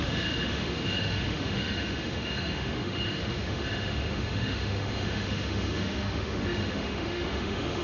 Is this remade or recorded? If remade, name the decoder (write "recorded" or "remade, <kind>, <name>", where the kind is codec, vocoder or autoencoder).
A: remade, autoencoder, DAC-VAE